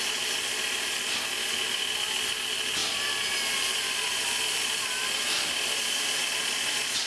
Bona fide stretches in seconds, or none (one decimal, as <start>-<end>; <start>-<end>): 0.0-2.8; 6.1-7.1